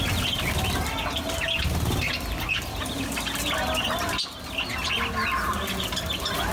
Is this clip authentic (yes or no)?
yes